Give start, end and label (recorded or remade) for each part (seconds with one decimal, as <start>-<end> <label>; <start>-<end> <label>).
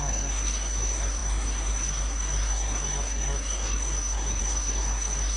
0.0-5.4 remade